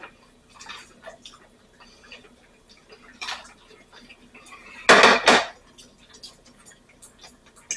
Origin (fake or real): real